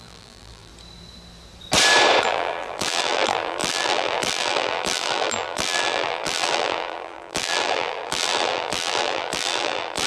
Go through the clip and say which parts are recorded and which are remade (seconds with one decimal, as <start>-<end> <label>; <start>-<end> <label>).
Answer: 0.0-0.7 remade; 0.7-2.2 recorded; 2.2-10.1 remade